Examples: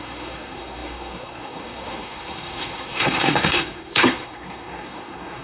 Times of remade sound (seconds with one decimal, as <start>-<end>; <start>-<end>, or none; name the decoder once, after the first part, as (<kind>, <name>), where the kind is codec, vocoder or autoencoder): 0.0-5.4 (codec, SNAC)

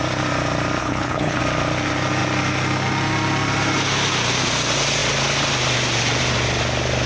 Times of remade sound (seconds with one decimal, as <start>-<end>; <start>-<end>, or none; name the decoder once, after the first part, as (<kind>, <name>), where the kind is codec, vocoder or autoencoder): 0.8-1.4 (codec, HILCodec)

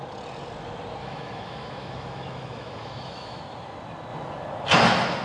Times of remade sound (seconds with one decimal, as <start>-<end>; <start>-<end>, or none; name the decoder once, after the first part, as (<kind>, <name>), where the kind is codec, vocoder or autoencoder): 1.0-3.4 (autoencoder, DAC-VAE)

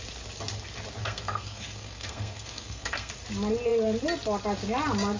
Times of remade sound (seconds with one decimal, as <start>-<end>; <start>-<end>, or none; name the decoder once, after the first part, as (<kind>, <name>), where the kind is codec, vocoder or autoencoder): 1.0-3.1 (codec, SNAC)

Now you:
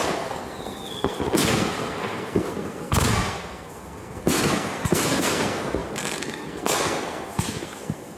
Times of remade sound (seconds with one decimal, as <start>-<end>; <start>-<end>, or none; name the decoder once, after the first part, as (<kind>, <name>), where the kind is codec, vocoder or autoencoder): 0.0-8.2 (codec, SNAC)